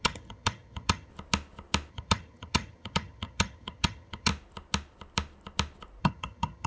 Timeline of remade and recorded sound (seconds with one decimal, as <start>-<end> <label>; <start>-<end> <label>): 0.0-1.1 remade; 1.1-1.9 recorded; 1.9-4.3 remade; 4.3-6.0 recorded; 6.0-6.7 remade

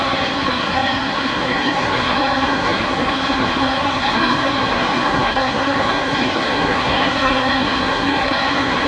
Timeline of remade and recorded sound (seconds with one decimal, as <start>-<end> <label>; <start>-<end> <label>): 0.0-8.9 remade

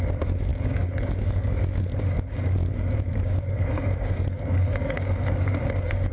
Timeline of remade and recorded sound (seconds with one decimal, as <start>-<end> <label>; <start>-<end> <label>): 0.0-0.5 recorded; 0.5-1.8 remade; 1.8-2.3 recorded; 2.3-6.1 remade

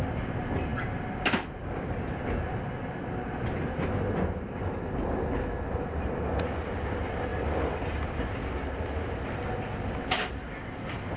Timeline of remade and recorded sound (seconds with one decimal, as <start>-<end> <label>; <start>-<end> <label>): 0.0-0.7 recorded; 0.7-1.9 remade; 1.9-7.3 recorded; 7.3-8.2 remade; 8.2-11.2 recorded

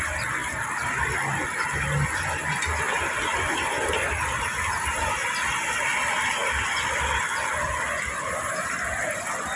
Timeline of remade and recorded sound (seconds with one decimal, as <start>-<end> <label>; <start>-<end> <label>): 0.0-9.6 recorded

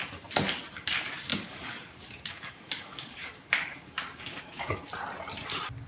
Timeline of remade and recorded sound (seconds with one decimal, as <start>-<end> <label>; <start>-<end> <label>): 0.0-1.3 recorded; 1.3-4.8 remade; 4.8-5.9 recorded

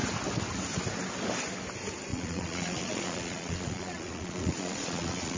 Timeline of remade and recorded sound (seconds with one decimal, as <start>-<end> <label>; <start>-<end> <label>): 0.0-2.1 recorded; 2.1-5.4 remade

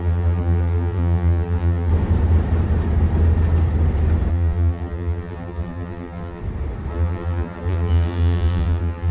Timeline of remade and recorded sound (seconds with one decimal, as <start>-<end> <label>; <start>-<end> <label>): 0.0-1.9 remade; 1.9-4.3 recorded; 4.3-6.4 remade; 6.4-6.9 recorded; 6.9-9.1 remade